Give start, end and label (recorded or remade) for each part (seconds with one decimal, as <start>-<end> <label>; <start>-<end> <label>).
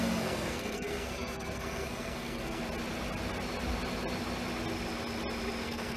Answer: 0.0-2.6 remade; 2.6-5.6 recorded; 5.6-6.0 remade